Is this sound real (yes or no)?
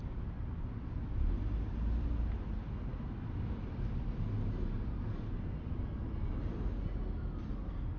yes